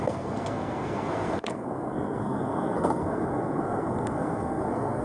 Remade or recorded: remade